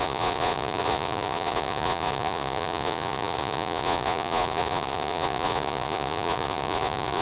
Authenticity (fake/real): fake